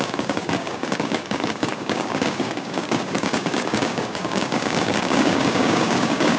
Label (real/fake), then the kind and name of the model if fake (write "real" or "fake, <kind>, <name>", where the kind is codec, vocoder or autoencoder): fake, codec, DAC